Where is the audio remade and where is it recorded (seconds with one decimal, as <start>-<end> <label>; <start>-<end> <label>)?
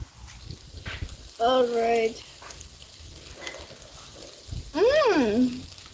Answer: 0.0-5.9 recorded